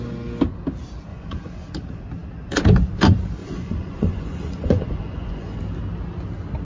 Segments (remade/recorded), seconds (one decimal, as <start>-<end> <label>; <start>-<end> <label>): 0.0-1.1 recorded; 1.1-1.7 remade; 1.7-3.4 recorded; 3.4-5.6 remade; 5.6-6.6 recorded